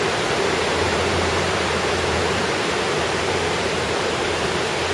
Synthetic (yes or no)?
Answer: yes